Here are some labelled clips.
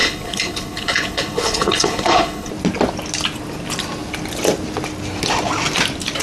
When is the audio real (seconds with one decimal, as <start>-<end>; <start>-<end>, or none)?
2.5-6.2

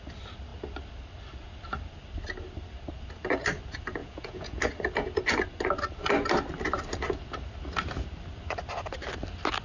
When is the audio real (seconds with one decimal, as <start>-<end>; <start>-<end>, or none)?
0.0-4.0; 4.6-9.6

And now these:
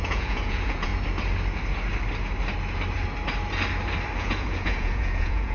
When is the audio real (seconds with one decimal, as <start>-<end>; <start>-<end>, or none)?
0.9-4.2

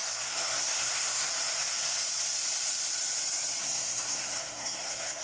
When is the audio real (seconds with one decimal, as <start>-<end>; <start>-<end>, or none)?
1.3-3.6

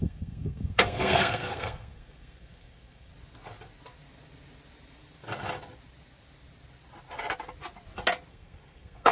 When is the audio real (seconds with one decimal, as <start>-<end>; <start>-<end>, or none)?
3.1-8.3

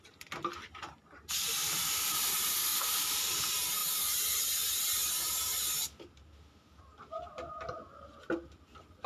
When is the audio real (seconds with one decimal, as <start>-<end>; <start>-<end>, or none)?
0.0-2.7; 3.3-9.1

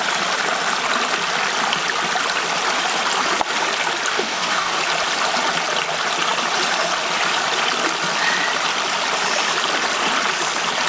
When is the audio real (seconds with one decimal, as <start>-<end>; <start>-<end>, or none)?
0.0-4.1; 4.8-10.9

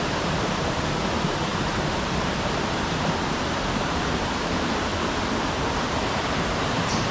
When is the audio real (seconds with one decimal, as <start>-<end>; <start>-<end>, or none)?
4.9-5.5